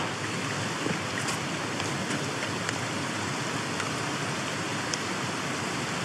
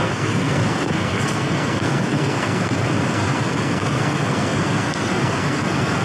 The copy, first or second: second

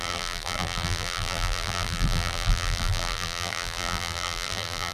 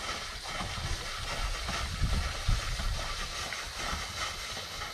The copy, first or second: first